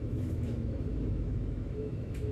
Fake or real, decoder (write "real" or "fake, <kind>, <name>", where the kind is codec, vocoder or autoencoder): fake, autoencoder, DAC-VAE